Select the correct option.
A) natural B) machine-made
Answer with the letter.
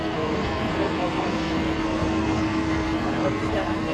B